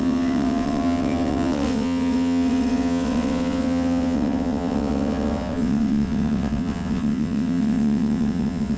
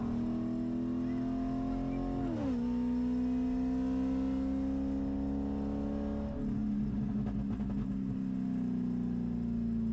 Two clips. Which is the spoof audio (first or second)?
first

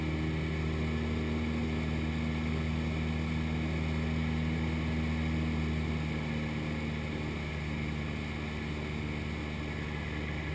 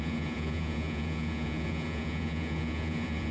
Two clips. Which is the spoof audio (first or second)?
second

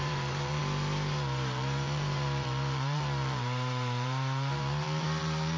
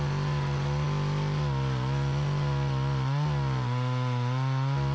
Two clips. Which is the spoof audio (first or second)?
first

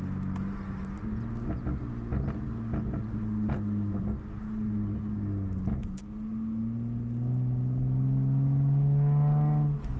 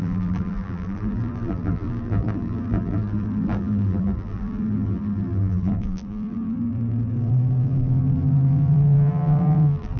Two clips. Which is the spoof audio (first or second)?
second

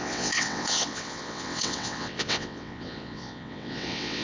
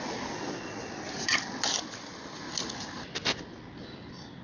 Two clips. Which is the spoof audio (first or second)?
first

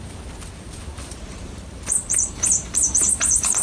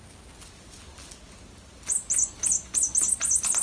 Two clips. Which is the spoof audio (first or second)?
first